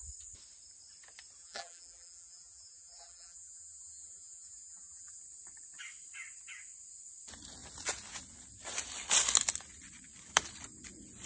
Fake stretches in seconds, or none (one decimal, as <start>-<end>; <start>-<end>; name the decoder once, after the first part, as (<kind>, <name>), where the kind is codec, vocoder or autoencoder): 1.4-5.2 (vocoder, BigVGAN v2)